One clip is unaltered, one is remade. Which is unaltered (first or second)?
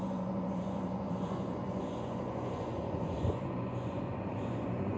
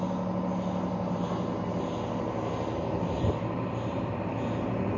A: second